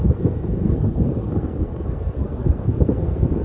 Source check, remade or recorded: remade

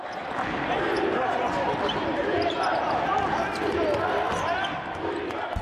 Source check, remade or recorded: remade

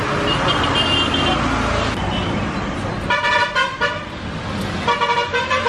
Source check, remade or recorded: recorded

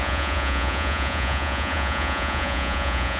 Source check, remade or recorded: remade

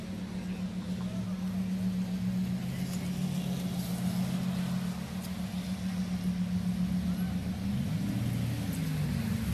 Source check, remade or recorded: recorded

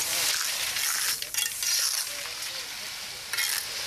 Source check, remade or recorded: recorded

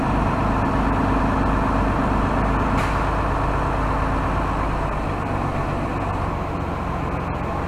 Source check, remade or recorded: recorded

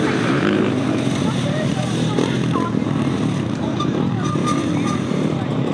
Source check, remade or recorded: remade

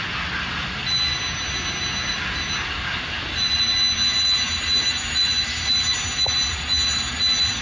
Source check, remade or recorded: recorded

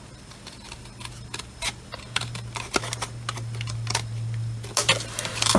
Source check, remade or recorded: recorded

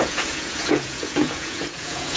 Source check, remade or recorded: remade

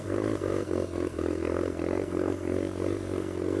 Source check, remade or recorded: remade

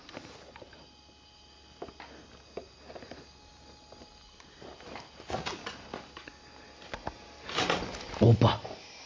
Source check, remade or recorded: recorded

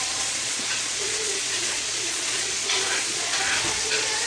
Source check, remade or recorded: remade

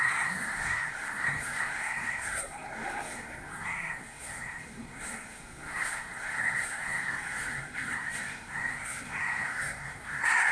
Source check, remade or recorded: remade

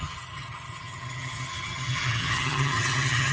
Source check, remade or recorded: remade